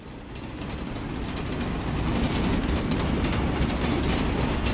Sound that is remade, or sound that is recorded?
recorded